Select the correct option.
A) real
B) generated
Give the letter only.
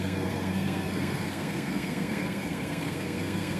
B